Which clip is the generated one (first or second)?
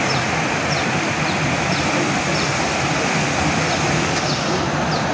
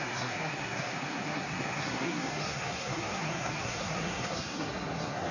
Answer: second